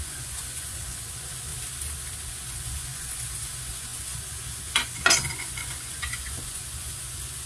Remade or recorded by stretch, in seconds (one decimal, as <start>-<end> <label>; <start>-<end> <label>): 0.0-1.5 remade; 1.5-2.3 recorded; 2.3-7.5 remade